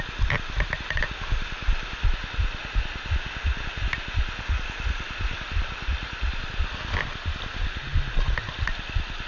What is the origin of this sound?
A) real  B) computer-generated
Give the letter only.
A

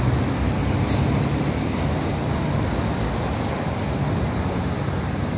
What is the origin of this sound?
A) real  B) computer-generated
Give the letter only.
A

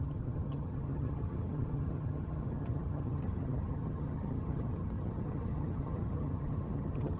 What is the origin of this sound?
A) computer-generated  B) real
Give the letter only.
A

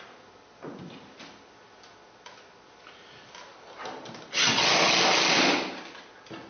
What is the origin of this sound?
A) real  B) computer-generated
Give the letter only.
A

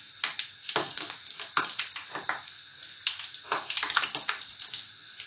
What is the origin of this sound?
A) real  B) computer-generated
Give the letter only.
A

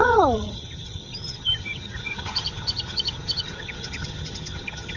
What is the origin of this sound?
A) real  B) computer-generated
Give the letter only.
B